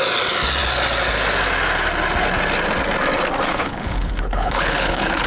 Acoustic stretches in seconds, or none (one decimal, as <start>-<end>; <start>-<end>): 0.0-3.5

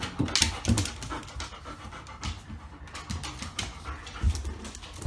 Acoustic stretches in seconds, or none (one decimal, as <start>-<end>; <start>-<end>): 0.0-5.1

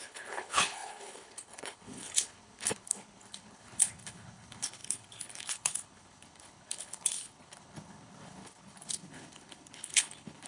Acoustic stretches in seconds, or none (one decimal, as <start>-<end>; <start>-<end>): none

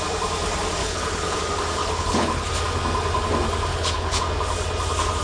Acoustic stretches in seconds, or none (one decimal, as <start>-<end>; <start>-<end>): 0.0-0.8; 1.4-1.8; 2.5-3.7; 4.2-5.2

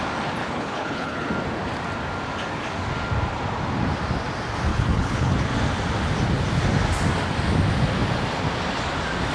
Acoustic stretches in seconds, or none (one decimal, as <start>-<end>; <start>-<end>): 0.0-0.4; 1.3-4.7; 5.3-9.3